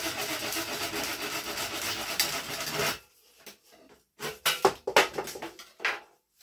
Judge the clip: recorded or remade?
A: recorded